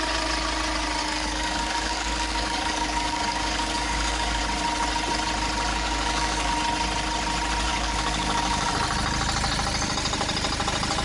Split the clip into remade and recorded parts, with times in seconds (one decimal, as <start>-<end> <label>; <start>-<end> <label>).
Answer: 0.0-1.0 recorded; 1.0-4.4 remade; 4.4-5.7 recorded; 5.7-6.5 remade; 6.5-7.7 recorded; 7.7-8.7 remade; 8.7-11.0 recorded